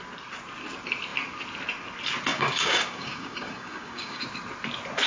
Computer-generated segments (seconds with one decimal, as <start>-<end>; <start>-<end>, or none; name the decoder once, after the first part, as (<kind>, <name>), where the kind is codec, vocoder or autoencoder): 2.3-4.2 (codec, DAC)